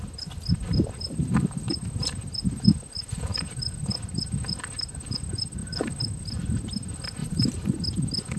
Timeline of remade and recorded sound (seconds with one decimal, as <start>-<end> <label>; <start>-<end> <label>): 0.0-7.2 recorded; 7.2-7.7 remade; 7.7-8.4 recorded